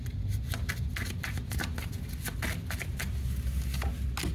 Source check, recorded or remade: recorded